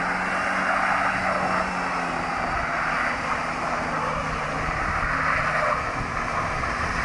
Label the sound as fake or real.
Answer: real